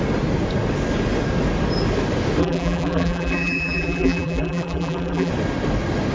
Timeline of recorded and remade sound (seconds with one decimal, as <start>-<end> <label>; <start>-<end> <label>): 0.0-2.4 recorded; 2.4-5.3 remade; 5.3-6.1 recorded